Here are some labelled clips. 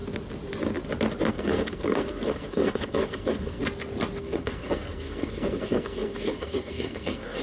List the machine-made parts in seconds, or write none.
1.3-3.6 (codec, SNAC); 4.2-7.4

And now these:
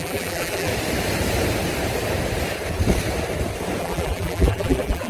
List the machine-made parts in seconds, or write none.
0.0-0.7 (vocoder, BigVGAN v2); 3.8-5.1

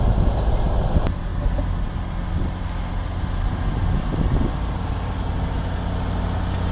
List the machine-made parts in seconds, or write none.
none

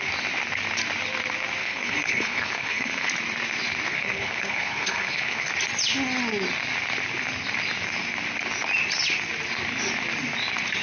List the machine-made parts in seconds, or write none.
1.6-3.1 (codec, HILCodec); 3.9-5.5